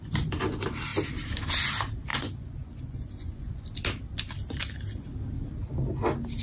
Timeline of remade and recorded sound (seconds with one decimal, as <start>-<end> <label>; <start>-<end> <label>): 0.0-2.1 recorded; 2.1-3.6 remade; 3.6-6.4 recorded